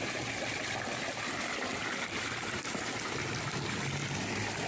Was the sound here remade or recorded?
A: recorded